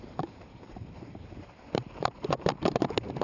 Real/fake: fake